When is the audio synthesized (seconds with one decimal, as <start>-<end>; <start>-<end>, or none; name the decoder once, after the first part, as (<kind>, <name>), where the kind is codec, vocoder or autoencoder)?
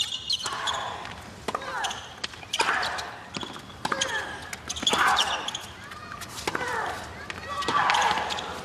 none